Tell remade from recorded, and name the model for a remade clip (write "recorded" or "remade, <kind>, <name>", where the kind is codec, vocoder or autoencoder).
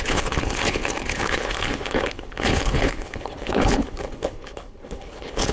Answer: remade, codec, HILCodec